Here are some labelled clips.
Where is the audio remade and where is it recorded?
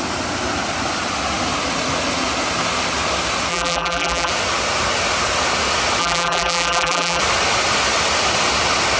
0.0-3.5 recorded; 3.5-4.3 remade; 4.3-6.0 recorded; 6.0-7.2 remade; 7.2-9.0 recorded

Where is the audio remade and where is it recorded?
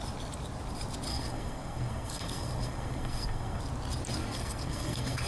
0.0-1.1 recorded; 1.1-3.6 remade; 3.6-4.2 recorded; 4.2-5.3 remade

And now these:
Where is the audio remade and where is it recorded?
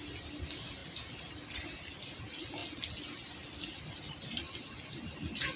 0.0-0.8 recorded; 0.8-2.2 remade; 2.2-5.6 recorded